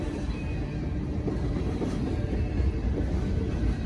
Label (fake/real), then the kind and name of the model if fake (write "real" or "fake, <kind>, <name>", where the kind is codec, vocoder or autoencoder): real